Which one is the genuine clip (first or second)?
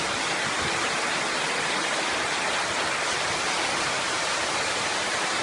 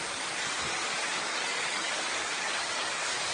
first